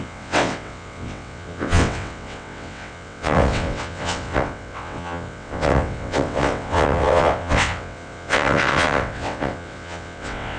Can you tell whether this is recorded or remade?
remade